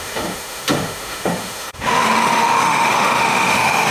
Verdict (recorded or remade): remade